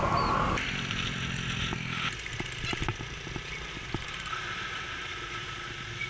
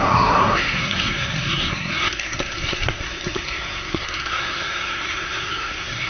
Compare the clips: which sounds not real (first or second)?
second